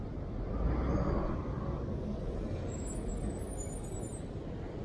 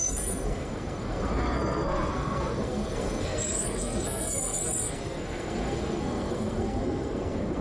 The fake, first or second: second